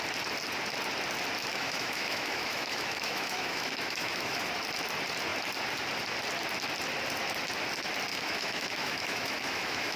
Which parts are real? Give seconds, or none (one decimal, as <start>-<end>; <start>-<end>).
0.0-1.5; 4.5-8.1